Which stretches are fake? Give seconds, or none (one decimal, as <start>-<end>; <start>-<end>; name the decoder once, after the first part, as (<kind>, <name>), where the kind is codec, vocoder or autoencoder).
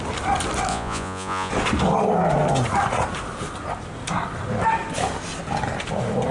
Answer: 0.7-1.5 (vocoder, Vocos)